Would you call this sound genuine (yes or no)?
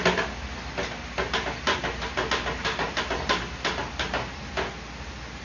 yes